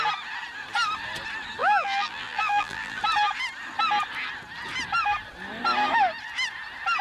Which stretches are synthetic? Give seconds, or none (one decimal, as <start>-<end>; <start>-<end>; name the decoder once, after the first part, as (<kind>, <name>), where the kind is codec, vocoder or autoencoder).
1.6-3.0 (vocoder, BigVGAN v2)